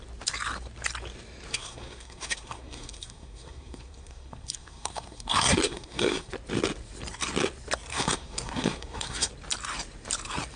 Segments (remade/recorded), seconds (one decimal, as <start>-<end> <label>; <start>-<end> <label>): 0.0-1.5 recorded; 1.5-6.3 remade; 6.3-7.9 recorded; 7.9-9.3 remade; 9.3-10.6 recorded